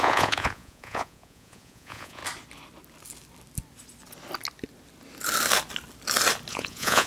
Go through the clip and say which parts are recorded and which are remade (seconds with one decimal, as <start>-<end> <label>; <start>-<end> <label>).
0.0-2.2 remade; 2.2-6.5 recorded; 6.5-7.1 remade